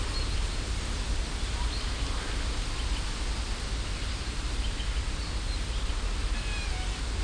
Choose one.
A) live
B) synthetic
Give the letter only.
A